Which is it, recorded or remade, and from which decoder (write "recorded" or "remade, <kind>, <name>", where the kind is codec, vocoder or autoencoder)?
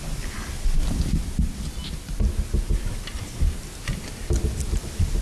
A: recorded